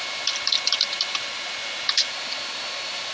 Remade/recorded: recorded